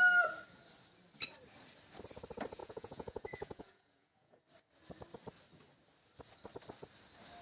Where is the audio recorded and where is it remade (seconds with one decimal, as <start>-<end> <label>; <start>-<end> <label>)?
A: 0.0-2.6 recorded; 2.6-4.4 remade; 4.4-7.4 recorded